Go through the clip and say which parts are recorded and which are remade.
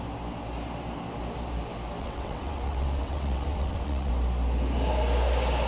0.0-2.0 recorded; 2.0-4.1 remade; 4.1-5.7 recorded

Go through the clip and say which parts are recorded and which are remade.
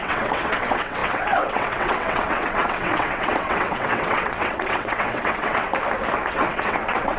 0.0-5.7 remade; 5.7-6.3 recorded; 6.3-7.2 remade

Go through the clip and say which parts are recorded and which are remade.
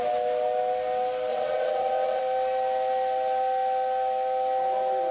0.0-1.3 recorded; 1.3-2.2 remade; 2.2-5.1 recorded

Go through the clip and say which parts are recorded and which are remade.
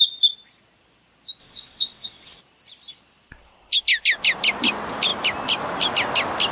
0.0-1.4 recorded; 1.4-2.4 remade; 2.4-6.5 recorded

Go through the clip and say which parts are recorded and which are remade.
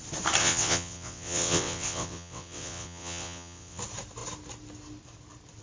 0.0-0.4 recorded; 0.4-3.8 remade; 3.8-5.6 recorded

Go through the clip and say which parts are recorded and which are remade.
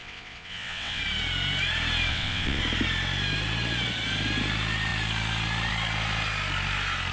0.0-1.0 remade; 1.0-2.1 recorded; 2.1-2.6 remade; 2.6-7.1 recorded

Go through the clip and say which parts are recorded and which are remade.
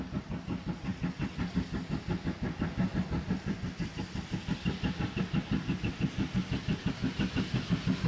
0.0-8.1 recorded